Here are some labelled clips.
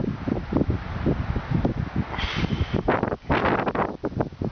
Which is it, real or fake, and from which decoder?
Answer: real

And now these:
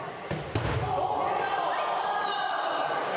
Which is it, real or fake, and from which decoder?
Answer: real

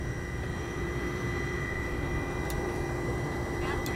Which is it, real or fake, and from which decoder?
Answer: fake, vocoder, BigVGAN v2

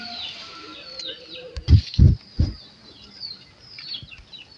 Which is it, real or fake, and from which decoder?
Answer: real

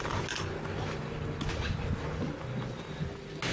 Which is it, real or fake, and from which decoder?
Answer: real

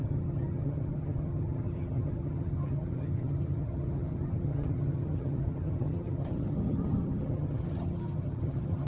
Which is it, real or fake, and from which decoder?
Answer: fake, vocoder, HiFi-GAN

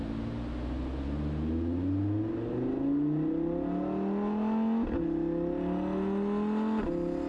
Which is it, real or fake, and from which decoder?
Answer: real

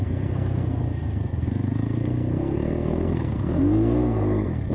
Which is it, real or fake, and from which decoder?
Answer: fake, codec, SNAC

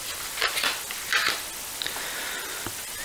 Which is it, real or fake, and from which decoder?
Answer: real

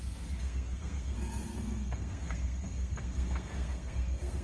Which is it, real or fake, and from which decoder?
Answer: fake, codec, SNAC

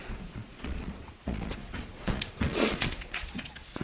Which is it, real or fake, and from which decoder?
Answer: fake, vocoder, Vocos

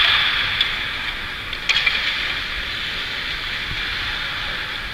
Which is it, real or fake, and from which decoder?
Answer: real